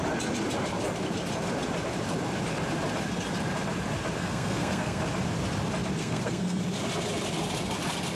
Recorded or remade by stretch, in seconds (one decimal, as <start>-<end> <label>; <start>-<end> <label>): 0.0-4.2 recorded; 4.2-5.0 remade; 5.0-6.0 recorded; 6.0-6.6 remade; 6.6-8.2 recorded